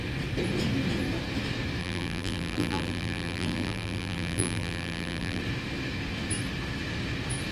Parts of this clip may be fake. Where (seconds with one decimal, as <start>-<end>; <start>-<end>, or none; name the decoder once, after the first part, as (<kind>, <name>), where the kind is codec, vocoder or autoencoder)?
1.8-5.4 (vocoder, BigVGAN v2)